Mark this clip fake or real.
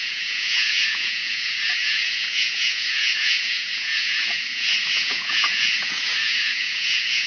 fake